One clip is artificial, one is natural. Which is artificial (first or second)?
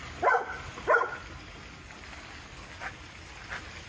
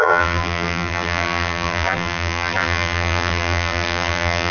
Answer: second